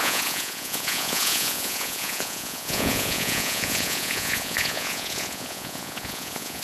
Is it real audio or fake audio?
fake